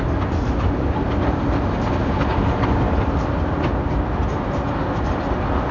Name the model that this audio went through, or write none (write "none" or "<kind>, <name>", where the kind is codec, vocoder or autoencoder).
none